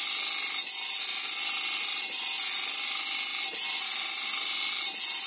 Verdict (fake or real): real